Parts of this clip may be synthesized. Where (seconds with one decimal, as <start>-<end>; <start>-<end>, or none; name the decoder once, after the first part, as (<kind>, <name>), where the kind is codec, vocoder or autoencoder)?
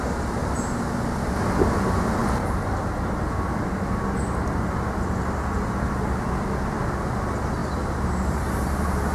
2.2-2.8 (vocoder, BigVGAN v2); 7.6-9.1